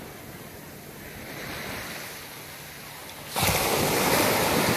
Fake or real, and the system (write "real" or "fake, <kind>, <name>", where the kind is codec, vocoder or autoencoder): real